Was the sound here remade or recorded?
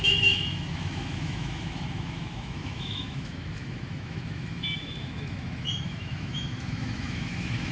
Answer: remade